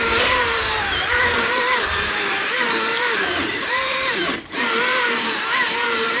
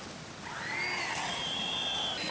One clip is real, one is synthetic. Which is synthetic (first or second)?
first